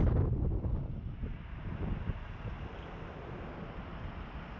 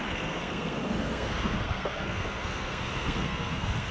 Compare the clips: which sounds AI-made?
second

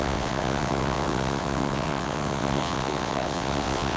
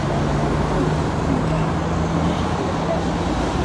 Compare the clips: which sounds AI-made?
first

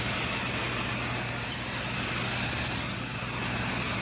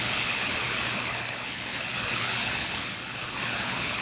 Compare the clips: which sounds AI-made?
second